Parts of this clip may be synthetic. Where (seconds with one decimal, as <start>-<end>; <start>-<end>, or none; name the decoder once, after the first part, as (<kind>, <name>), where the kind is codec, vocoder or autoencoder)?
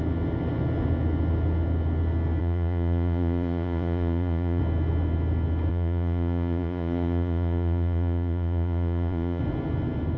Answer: 2.4-4.6 (vocoder, Vocos); 5.7-9.4